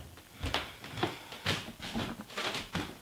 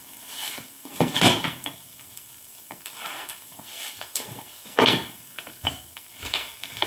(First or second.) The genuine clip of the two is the first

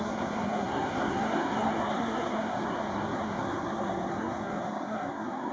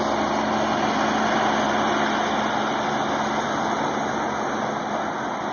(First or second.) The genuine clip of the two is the second